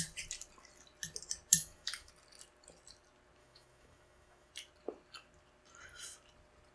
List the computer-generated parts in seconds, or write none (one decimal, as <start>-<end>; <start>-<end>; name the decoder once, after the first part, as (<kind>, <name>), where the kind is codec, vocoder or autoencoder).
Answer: 1.5-2.1 (autoencoder, DAC-VAE); 3.4-4.5